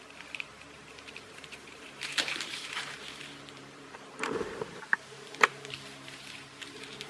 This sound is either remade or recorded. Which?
remade